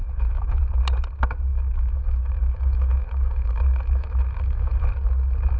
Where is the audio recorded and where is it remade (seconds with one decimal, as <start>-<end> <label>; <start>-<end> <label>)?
0.0-0.6 remade; 0.6-1.5 recorded; 1.5-4.9 remade; 4.9-5.6 recorded